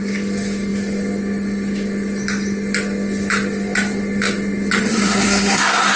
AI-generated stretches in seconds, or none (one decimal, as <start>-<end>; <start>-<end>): 4.9-6.0